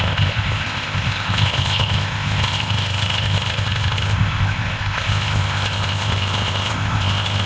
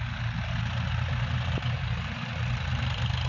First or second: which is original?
second